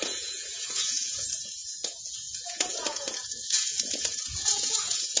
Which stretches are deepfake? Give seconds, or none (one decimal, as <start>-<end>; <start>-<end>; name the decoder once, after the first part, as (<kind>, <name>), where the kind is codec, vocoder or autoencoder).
0.0-5.2 (vocoder, Vocos)